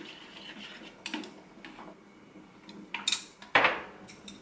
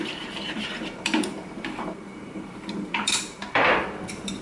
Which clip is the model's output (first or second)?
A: second